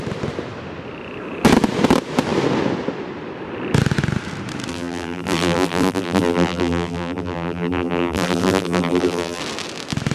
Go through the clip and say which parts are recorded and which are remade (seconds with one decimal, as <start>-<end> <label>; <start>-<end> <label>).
0.0-4.7 recorded; 4.7-9.4 remade; 9.4-10.1 recorded